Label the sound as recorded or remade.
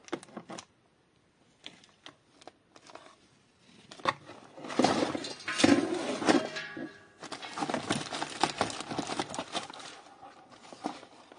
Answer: recorded